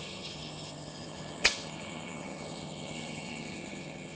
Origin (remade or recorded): remade